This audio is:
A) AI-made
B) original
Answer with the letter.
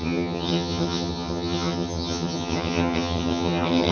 A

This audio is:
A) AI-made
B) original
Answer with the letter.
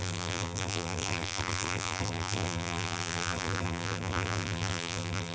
A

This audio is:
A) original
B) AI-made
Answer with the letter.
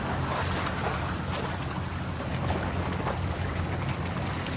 A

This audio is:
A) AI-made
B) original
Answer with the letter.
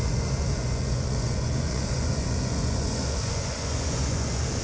A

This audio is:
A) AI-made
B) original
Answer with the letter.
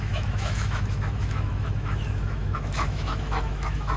A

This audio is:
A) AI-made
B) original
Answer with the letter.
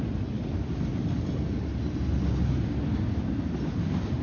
B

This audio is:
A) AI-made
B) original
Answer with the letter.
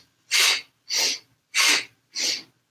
B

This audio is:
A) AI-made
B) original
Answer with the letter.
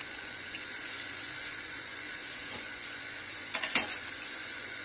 A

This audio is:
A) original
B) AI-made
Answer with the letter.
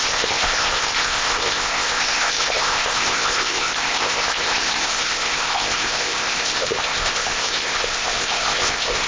B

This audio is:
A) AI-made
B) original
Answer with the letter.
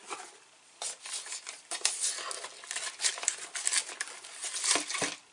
B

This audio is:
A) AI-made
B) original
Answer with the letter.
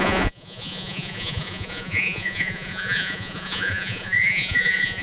A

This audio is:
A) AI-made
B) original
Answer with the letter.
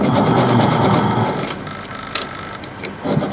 B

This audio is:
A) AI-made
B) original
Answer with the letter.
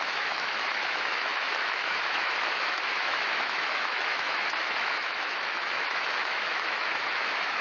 A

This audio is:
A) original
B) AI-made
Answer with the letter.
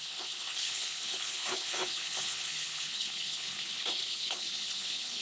B